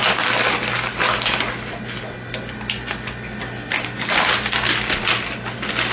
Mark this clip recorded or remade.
recorded